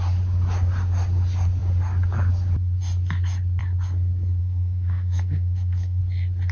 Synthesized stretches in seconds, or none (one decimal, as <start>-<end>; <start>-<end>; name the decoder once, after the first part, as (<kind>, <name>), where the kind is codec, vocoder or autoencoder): 4.4-6.0 (codec, SNAC)